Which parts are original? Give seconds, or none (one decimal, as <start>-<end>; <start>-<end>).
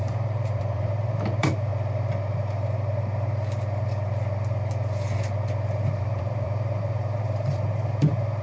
1.7-6.0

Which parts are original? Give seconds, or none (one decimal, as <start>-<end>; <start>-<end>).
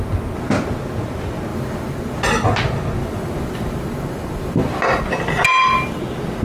0.0-1.5; 2.2-3.0; 5.0-5.5; 6.0-6.4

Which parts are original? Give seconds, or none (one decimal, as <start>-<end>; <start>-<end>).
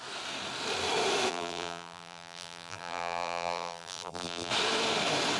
0.0-1.3; 4.5-5.4